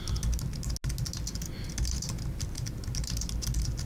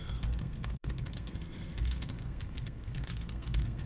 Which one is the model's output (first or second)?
second